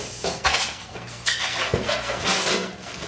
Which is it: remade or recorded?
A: remade